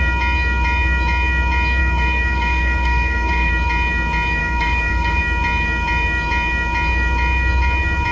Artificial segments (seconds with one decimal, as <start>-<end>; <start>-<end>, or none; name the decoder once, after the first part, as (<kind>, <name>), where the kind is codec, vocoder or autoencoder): 1.8-3.5 (codec, DAC); 4.4-5.2

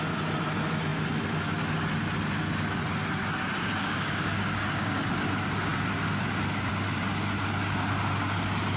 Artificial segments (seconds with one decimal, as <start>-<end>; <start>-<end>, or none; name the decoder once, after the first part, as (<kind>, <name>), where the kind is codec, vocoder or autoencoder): 3.8-5.0 (codec, DAC)